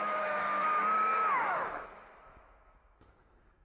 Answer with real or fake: fake